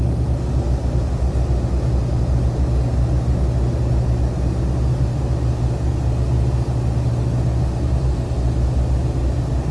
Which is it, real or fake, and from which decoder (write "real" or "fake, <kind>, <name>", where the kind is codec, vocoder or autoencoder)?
real